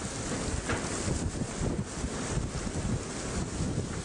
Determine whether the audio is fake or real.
real